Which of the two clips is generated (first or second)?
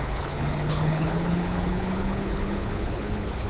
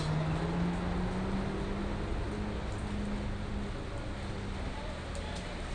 first